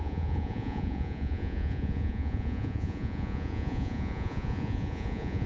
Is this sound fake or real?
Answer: fake